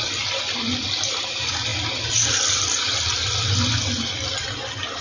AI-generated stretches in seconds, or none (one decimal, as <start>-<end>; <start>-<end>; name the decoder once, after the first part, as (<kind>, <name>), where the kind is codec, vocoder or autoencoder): none

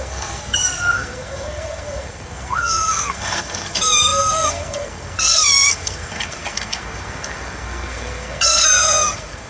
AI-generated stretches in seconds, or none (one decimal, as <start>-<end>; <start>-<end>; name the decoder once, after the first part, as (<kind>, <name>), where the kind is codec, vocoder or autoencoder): 0.0-9.5 (codec, SNAC)

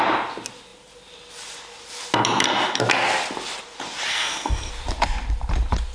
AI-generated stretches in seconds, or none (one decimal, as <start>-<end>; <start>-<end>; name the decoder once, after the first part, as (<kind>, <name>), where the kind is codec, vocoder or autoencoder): 4.1-4.7 (codec, SNAC)

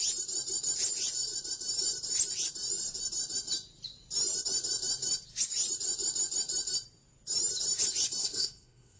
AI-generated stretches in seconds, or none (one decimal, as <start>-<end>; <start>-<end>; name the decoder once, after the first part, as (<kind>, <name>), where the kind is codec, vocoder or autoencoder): 8.2-9.0 (codec, SNAC)

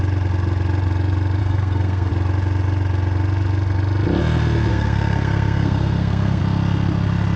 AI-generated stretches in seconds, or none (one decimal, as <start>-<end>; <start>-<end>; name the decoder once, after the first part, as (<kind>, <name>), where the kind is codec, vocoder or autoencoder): 1.4-2.1 (codec, SNAC); 4.7-6.4

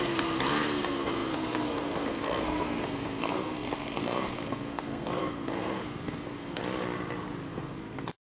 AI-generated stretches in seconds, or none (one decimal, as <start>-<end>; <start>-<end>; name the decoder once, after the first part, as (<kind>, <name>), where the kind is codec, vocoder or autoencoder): 0.0-6.6 (codec, SNAC); 7.5-8.3